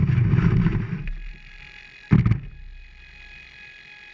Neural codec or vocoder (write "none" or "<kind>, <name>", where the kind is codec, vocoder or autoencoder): none